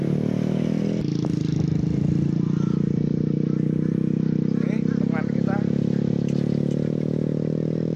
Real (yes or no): yes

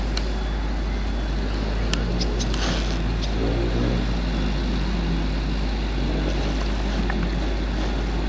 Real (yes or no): yes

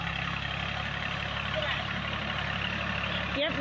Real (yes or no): yes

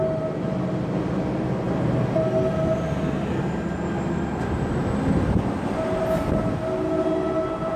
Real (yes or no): yes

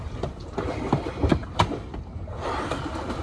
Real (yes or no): no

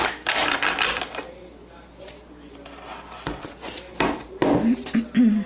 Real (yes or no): yes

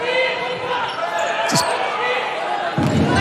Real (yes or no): yes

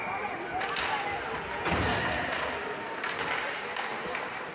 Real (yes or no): yes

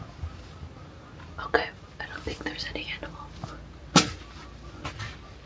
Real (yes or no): yes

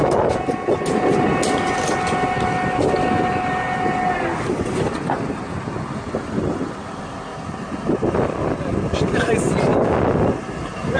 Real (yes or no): yes